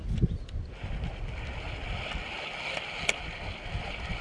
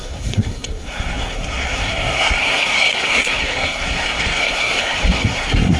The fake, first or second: second